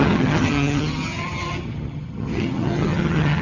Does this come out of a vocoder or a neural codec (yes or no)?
yes